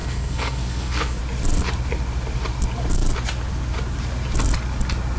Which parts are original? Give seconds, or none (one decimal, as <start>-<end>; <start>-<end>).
1.2-5.2